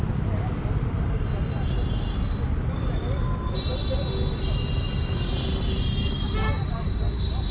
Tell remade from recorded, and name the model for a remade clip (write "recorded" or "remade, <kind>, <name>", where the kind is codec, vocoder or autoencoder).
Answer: recorded